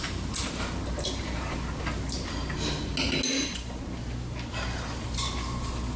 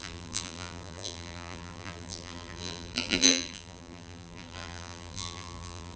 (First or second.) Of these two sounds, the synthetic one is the second